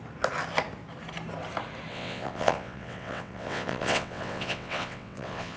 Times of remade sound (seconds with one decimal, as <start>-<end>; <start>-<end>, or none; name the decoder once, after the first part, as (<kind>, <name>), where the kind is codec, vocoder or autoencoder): 1.9-5.6 (vocoder, WaveNeXt)